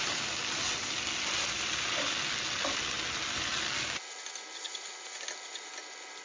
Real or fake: real